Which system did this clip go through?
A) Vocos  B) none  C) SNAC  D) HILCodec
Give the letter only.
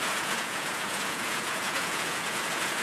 A